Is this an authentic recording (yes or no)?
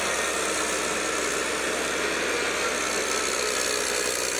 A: yes